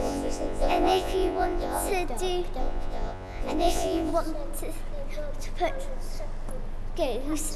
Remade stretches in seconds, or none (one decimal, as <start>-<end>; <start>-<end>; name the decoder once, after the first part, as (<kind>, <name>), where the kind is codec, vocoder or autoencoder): 0.0-1.9 (vocoder, Vocos); 2.6-4.1